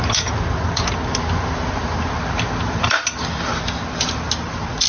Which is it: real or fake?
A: real